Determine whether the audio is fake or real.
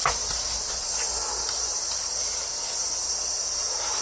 real